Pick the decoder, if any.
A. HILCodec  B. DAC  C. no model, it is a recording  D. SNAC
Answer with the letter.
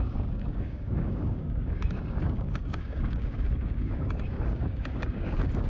B